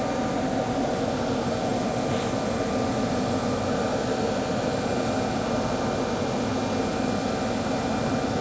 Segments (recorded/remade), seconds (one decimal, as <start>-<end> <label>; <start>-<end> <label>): 0.0-8.4 recorded